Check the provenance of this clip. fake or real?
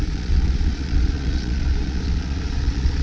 fake